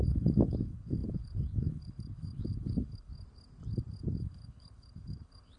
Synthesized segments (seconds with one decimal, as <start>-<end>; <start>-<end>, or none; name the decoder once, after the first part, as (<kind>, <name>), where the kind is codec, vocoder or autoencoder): 0.0-3.1 (codec, HILCodec); 4.2-5.6